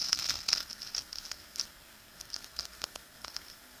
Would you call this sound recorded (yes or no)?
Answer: no